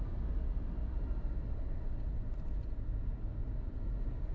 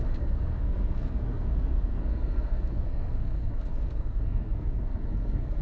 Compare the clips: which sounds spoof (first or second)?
second